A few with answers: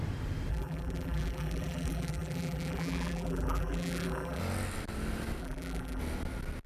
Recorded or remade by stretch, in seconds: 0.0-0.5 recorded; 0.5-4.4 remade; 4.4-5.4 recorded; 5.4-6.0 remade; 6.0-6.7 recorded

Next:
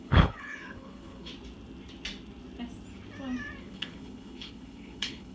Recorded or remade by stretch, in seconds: 0.0-1.3 remade; 1.3-3.6 recorded; 3.6-5.3 remade

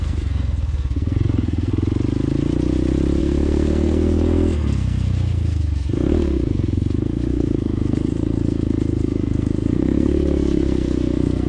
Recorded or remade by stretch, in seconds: 0.0-1.7 remade; 1.7-3.2 recorded; 3.2-11.5 remade